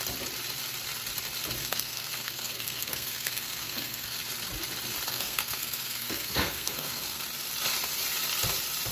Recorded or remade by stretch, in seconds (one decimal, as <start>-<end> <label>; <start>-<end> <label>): 0.0-1.6 recorded; 1.6-4.2 remade; 4.2-5.1 recorded; 5.1-7.2 remade; 7.2-8.9 recorded